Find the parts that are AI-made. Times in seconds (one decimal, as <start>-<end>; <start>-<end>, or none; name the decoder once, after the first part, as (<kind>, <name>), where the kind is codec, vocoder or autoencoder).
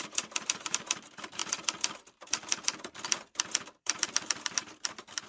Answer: 0.0-1.4 (vocoder, BigVGAN v2); 3.8-5.3